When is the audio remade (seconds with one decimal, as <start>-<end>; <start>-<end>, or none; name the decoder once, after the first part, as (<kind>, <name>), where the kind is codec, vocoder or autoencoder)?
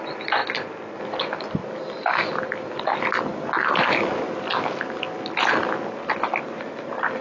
none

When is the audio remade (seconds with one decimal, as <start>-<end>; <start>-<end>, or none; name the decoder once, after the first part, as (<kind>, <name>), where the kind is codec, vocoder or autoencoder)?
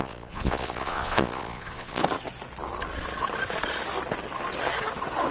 0.0-2.0 (vocoder, Vocos)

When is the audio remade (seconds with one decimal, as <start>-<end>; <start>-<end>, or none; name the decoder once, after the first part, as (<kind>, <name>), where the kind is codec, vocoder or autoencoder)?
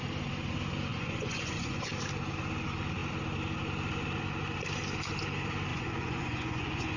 0.9-1.9 (vocoder, Vocos); 5.7-7.0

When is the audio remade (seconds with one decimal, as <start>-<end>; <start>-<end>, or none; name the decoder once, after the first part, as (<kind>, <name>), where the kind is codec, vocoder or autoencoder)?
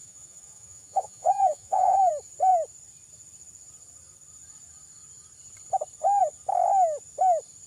0.0-2.1 (vocoder, Vocos)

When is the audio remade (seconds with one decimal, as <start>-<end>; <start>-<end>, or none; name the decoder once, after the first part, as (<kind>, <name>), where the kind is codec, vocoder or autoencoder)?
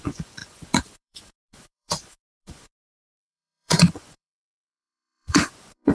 0.0-5.9 (vocoder, Vocos)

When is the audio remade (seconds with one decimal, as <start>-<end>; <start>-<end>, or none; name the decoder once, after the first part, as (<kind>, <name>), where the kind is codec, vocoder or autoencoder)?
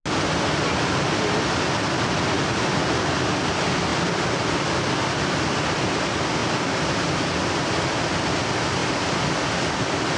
none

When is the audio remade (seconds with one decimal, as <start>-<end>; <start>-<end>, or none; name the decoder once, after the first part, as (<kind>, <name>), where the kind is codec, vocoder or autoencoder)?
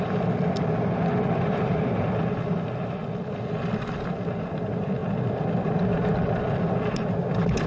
none